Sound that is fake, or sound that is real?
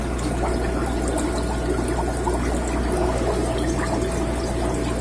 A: real